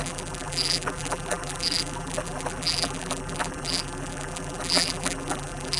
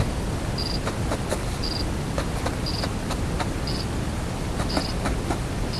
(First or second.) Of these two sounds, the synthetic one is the first